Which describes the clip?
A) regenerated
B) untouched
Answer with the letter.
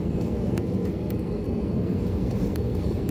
A